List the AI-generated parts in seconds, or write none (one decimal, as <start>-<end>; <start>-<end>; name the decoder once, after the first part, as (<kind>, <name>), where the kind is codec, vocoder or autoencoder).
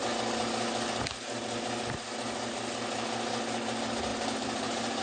4.1-5.0 (vocoder, BigVGAN v2)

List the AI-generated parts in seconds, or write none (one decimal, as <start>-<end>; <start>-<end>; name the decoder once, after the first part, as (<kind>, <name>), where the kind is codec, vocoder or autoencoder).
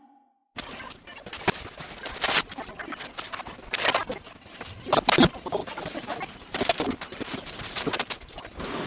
5.6-8.4 (vocoder, BigVGAN v2)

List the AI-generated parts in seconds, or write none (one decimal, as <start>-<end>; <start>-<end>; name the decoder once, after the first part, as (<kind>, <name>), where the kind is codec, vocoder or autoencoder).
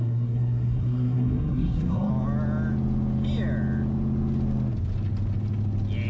0.0-2.1 (codec, SNAC)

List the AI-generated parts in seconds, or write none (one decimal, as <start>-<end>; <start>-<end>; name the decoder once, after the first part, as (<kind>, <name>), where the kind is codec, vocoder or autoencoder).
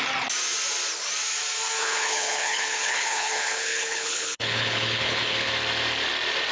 1.8-5.5 (codec, HILCodec)